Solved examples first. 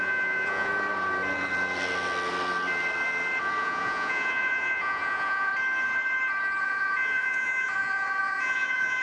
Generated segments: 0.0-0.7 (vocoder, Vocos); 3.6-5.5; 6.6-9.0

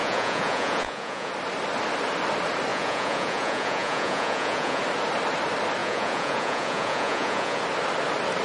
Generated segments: 0.0-1.3 (vocoder, Vocos); 2.7-4.8; 5.8-7.6

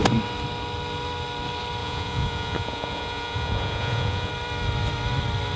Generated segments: 1.8-4.3 (vocoder, Vocos)

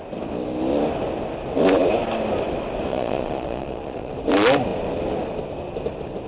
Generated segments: 2.9-4.1 (vocoder, Vocos)

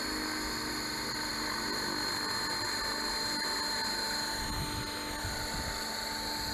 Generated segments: none

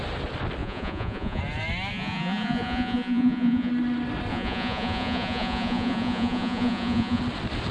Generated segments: 0.6-1.4 (vocoder, Vocos); 1.9-3.7; 4.3-7.2

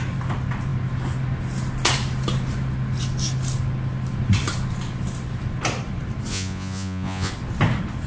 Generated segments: 6.3-7.3 (vocoder, Vocos)

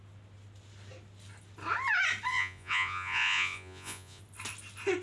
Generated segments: 2.3-4.2 (vocoder, Vocos)